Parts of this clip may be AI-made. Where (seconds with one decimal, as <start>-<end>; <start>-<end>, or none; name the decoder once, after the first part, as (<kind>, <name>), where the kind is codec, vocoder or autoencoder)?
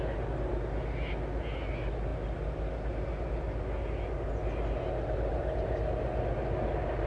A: none